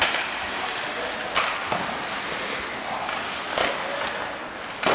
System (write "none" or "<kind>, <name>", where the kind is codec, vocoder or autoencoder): none